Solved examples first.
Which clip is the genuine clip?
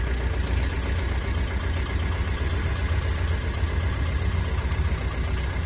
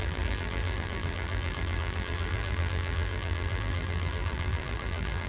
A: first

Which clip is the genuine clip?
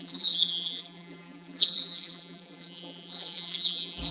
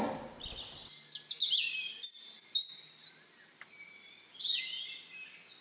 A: second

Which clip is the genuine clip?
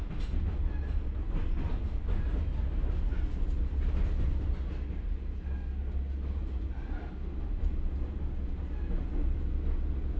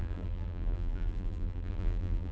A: first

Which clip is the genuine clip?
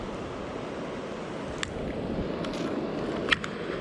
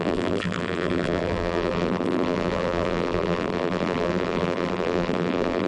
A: first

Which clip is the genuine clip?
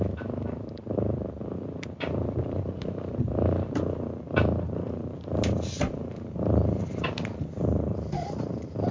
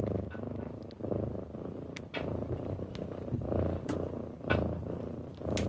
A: second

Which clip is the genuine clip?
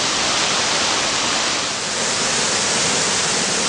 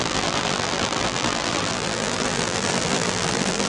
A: first